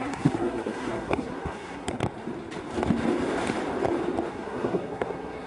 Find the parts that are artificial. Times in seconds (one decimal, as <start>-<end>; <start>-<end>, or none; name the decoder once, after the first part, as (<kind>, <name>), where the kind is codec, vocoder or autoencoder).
0.0-2.0 (codec, SNAC); 4.3-5.5